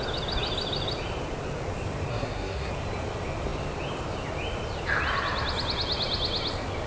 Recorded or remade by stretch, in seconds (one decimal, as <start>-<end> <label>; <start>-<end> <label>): 0.0-2.1 recorded; 2.1-2.7 remade; 2.7-6.9 recorded